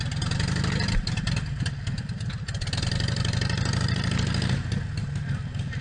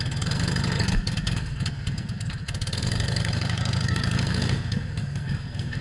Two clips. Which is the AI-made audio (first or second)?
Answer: second